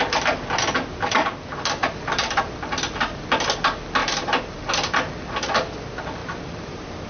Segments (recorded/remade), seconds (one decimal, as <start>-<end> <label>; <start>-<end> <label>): 0.0-1.8 recorded; 1.8-2.4 remade; 2.4-4.0 recorded; 4.0-4.7 remade; 4.7-6.2 recorded; 6.2-7.1 remade